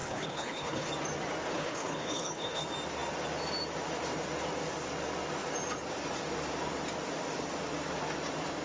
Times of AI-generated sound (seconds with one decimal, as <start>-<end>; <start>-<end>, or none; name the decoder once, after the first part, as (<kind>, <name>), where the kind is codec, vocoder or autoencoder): 0.0-0.9 (codec, HILCodec); 1.5-2.6